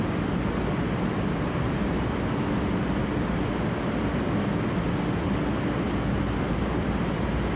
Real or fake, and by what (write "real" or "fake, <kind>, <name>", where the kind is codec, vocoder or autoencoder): real